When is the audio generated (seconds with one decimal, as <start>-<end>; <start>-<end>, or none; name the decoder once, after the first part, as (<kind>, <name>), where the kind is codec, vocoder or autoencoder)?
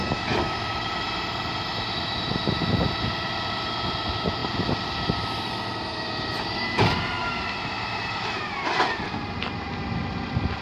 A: 0.0-2.6 (vocoder, BigVGAN v2); 4.4-6.6; 7.2-8.5